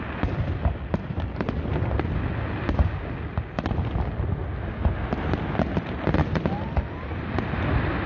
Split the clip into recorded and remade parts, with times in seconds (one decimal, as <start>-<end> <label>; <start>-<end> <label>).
0.0-8.1 recorded